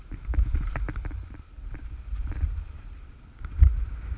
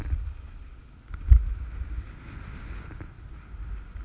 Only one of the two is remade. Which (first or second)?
first